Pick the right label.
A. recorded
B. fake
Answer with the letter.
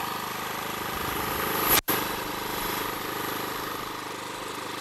A